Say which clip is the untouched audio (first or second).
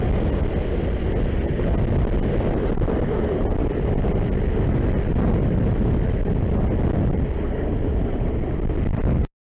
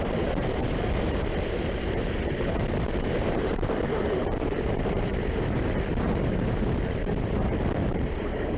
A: first